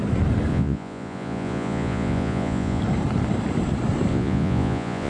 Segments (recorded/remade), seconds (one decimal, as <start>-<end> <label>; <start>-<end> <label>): 0.0-0.5 recorded; 0.5-2.8 remade; 2.8-4.1 recorded; 4.1-5.1 remade